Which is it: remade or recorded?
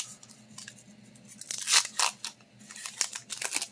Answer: recorded